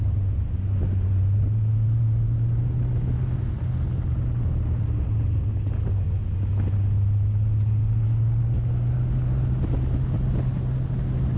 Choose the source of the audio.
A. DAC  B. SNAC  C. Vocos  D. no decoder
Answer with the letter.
D